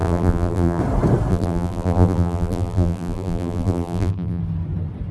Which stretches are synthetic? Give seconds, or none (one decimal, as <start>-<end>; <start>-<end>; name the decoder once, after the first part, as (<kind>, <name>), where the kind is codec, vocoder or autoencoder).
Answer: 0.0-0.8 (vocoder, BigVGAN v2); 1.3-4.4